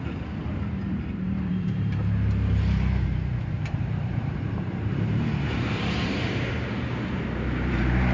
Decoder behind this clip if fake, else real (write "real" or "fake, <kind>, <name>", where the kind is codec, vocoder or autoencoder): fake, vocoder, BigVGAN v2